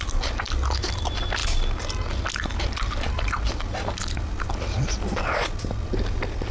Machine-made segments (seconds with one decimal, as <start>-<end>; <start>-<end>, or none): none

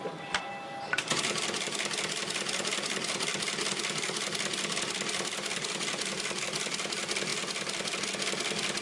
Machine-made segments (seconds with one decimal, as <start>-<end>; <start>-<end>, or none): none

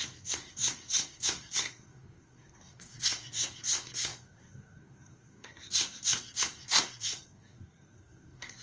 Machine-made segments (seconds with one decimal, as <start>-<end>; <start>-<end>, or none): 0.0-8.6

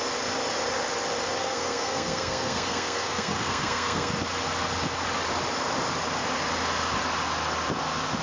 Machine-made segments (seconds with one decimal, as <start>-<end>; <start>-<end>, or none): 1.4-4.1

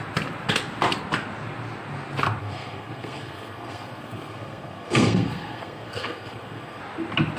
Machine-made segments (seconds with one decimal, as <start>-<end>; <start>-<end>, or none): 2.4-6.8

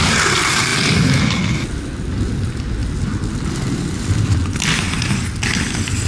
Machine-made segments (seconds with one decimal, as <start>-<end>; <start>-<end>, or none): none

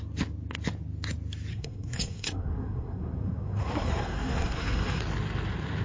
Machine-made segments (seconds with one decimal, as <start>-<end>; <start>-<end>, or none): 1.5-5.0

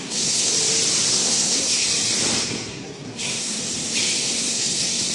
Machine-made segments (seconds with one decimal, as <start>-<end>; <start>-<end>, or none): 0.0-0.5; 1.1-1.9; 2.4-3.6; 4.2-5.1